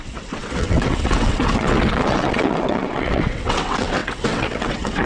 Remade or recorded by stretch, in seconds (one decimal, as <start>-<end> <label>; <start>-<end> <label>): 0.0-5.1 remade